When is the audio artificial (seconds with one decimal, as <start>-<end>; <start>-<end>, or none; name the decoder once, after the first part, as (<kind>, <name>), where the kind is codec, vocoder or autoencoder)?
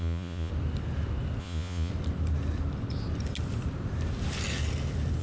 0.0-0.5 (vocoder, Vocos); 1.4-1.9